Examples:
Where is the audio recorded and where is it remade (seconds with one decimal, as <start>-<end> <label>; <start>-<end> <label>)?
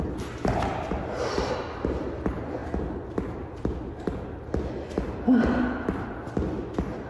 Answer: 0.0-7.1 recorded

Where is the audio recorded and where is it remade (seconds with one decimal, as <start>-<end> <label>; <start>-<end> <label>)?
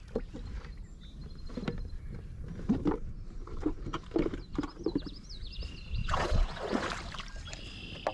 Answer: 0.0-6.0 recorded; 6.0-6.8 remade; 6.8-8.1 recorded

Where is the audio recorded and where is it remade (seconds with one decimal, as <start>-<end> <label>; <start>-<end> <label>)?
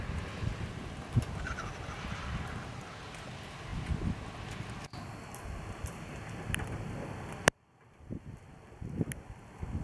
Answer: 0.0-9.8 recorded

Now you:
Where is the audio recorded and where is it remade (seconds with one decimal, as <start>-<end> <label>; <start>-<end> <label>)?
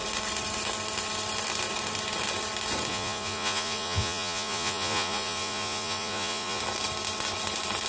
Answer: 0.0-2.9 recorded; 2.9-6.6 remade; 6.6-7.9 recorded